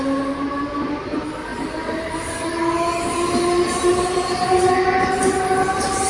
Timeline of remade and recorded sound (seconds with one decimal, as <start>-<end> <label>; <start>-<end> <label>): 0.0-6.1 recorded